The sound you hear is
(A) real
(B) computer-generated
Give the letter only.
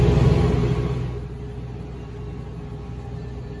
A